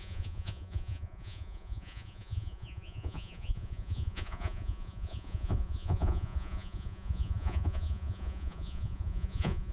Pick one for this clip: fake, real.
fake